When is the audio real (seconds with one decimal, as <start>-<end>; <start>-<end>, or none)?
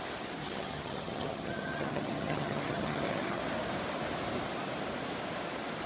0.0-0.4; 3.4-5.9